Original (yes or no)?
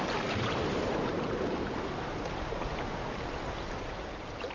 yes